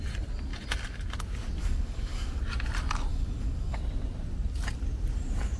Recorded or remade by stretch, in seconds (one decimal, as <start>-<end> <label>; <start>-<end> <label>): 0.0-1.6 recorded; 1.6-2.4 remade; 2.4-3.1 recorded; 3.1-3.8 remade; 3.8-5.6 recorded